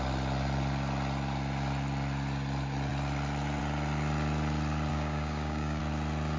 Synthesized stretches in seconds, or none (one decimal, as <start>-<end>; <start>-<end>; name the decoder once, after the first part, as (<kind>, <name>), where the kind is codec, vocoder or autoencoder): 4.9-5.8 (codec, DAC)